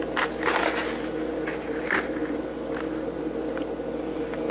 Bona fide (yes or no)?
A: yes